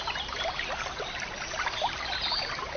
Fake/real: real